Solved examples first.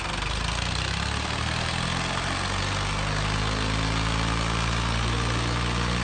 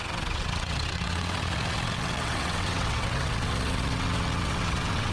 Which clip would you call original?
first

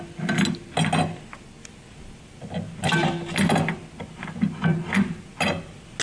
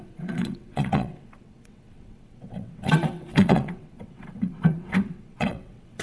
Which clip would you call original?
first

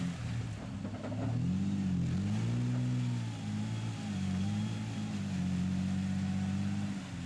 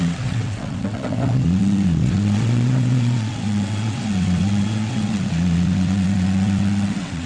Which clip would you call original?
first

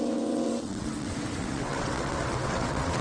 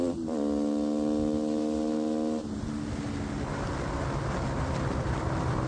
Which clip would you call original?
second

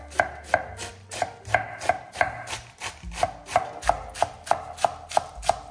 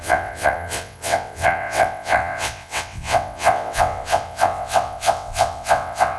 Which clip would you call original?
first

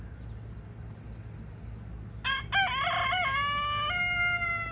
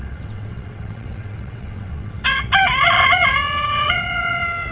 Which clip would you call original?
first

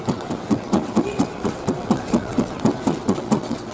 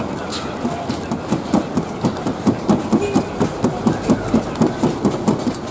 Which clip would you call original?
second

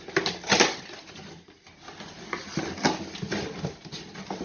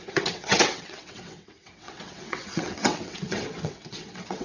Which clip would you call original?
first